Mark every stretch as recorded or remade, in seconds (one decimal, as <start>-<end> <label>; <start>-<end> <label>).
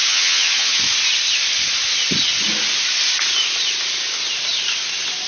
0.0-0.8 remade; 0.8-5.3 recorded